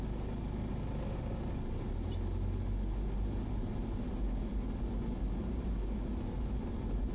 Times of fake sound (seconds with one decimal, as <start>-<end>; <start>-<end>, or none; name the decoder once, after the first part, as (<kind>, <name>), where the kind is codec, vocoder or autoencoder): none